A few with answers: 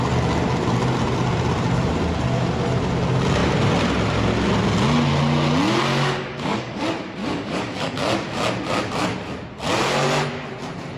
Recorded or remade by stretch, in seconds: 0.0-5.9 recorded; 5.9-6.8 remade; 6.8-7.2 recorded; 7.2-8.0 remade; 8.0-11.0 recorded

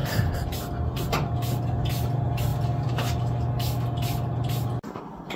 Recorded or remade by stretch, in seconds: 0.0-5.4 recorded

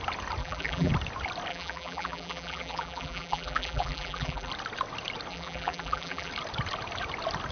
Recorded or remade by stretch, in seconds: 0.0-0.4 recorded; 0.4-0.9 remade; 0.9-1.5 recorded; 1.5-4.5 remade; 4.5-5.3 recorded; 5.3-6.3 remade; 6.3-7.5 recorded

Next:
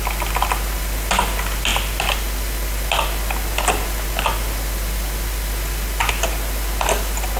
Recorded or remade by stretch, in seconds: 0.0-7.4 recorded

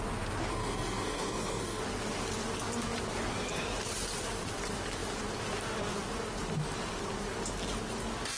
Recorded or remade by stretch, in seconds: 0.0-0.5 recorded; 0.5-1.8 remade; 1.8-8.4 recorded